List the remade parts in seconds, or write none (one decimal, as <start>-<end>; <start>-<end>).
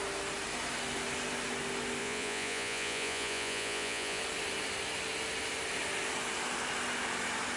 2.0-4.2